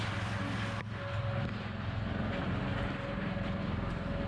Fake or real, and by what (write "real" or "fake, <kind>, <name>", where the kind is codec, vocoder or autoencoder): real